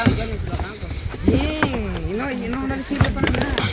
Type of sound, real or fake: real